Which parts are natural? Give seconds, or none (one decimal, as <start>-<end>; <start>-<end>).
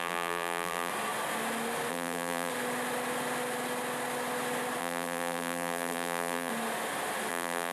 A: 0.9-1.9; 2.5-4.8; 6.5-7.3